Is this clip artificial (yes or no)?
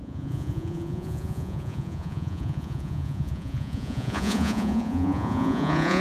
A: yes